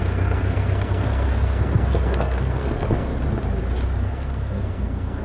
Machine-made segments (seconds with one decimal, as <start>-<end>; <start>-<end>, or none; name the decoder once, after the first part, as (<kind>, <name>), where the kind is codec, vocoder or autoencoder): 0.0-3.1 (codec, SNAC); 4.0-5.2